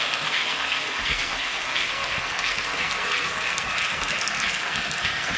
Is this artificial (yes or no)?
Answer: yes